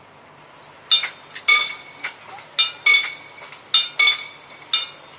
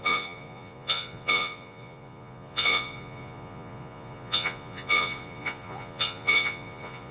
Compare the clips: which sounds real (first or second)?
first